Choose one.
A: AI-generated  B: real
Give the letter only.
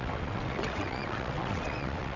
A